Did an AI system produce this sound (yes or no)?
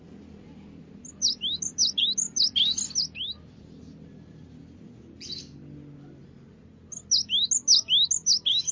no